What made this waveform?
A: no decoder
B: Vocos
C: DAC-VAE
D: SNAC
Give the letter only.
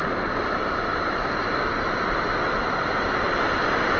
A